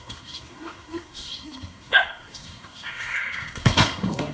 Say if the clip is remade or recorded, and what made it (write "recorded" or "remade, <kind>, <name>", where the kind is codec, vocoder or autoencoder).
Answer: remade, codec, SNAC